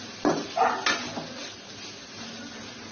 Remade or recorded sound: recorded